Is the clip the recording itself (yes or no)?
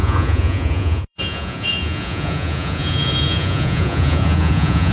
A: no